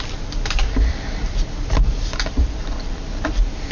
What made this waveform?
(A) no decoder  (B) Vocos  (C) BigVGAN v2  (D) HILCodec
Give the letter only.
C